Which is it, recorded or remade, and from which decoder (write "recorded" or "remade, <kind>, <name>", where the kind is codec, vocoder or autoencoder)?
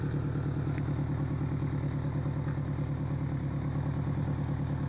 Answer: recorded